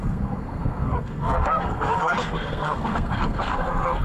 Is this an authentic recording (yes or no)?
no